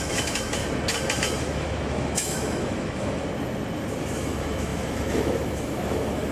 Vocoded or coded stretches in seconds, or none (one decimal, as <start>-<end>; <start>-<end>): 0.0-0.6; 1.4-3.2; 4.0-6.3